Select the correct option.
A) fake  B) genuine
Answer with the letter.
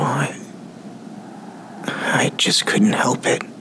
B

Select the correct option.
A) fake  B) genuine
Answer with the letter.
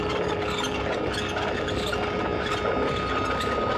B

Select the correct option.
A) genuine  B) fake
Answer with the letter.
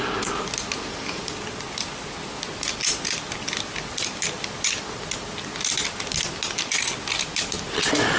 A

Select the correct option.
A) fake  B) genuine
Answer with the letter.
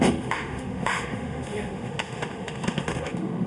A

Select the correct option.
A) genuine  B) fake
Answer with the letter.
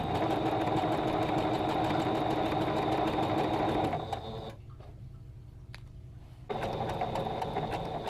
A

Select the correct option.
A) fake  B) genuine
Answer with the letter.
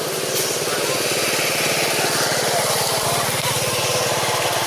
B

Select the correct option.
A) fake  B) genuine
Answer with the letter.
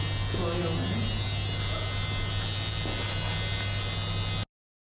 B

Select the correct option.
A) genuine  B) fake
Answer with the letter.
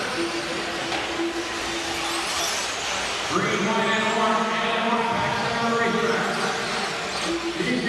A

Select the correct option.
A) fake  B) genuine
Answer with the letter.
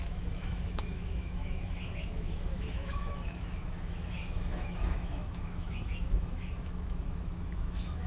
A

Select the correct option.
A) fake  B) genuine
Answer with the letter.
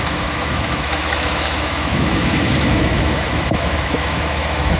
A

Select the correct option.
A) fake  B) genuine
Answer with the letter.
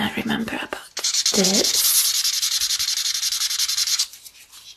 B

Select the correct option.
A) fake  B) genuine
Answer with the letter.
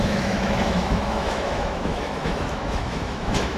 A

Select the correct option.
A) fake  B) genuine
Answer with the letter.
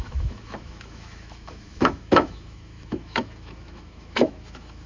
A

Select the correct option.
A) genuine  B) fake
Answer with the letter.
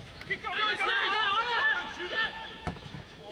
B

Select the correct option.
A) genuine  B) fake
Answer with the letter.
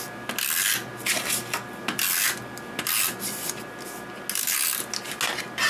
A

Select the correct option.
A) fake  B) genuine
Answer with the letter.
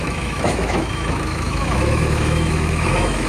A